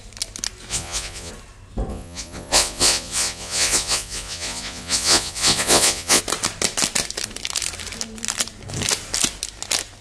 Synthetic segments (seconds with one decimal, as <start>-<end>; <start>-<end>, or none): 0.7-1.3; 1.9-6.2